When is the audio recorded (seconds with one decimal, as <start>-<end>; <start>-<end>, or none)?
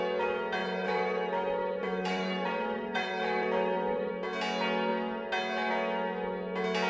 0.0-0.6; 4.1-6.9